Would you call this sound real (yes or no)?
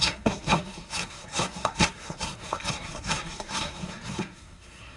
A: no